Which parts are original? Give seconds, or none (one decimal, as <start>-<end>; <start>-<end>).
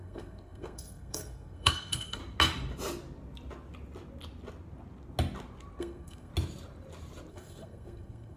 2.2-5.8; 6.3-7.3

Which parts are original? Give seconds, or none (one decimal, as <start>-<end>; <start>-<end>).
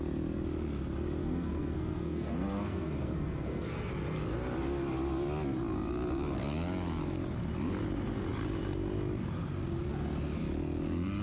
0.0-1.2; 3.9-11.2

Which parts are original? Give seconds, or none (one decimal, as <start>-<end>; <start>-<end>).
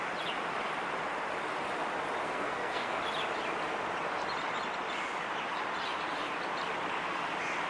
0.0-2.2; 3.0-7.7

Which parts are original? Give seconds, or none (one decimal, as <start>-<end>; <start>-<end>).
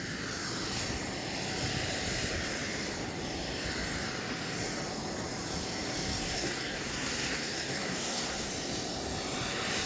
0.0-6.3; 8.5-9.9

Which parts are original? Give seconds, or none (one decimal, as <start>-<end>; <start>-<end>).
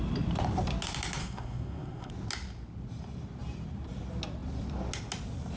0.0-1.2; 2.1-5.6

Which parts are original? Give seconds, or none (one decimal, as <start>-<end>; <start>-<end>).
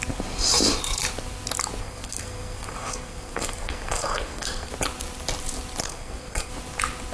0.0-1.8; 4.7-5.8; 6.5-7.1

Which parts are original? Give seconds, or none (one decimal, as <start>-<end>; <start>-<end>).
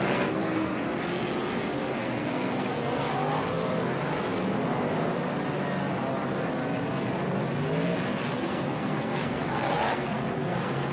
0.7-2.0; 3.1-8.2